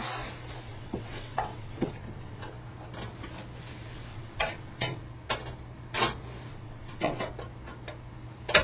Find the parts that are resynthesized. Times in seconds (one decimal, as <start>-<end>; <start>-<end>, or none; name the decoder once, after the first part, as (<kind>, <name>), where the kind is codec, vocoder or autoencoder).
0.7-2.5 (vocoder, WaveNeXt); 4.1-5.0; 6.5-7.3